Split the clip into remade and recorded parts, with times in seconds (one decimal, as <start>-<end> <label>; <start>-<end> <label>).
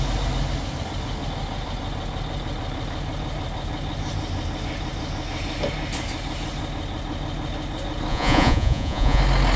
0.0-8.1 recorded; 8.1-9.2 remade; 9.2-9.6 recorded